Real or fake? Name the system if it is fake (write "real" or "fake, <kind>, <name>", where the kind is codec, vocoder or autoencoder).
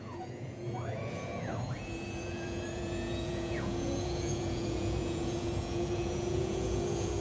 fake, vocoder, Vocos